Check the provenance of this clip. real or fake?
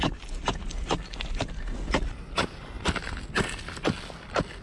real